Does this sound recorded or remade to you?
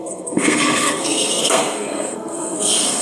remade